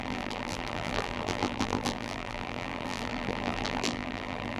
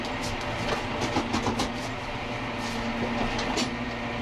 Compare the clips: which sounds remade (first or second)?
first